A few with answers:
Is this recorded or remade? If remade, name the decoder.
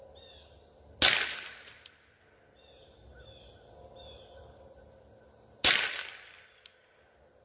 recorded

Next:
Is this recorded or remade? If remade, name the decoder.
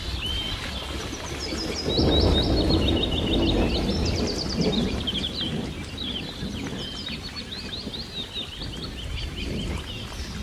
recorded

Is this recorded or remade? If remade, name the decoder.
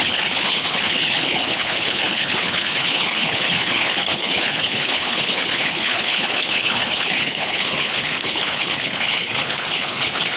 remade, codec, HILCodec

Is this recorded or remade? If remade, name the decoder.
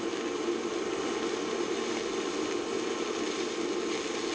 recorded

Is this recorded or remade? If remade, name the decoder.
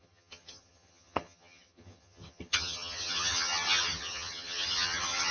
remade, vocoder, HiFi-GAN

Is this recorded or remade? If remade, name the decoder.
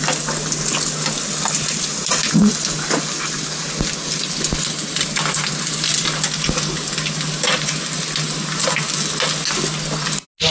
recorded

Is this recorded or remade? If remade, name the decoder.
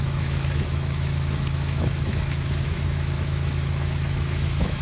remade, autoencoder, DAC-VAE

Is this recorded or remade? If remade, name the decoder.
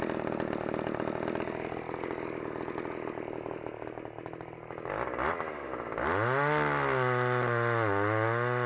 recorded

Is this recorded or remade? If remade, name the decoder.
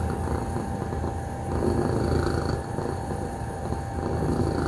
recorded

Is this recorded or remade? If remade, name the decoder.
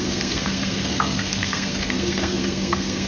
remade, codec, SNAC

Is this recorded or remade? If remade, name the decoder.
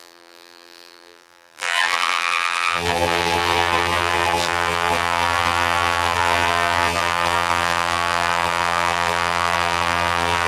remade, vocoder, BigVGAN v2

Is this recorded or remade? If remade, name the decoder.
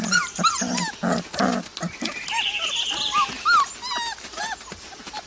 recorded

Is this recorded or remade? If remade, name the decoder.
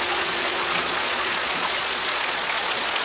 remade, vocoder, Vocos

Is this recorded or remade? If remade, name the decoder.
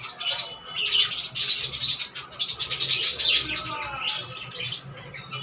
recorded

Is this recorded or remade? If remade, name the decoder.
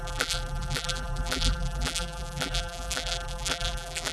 remade, vocoder, BigVGAN v2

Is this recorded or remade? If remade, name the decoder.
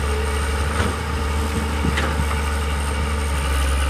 recorded